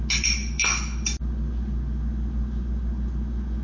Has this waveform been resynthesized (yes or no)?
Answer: no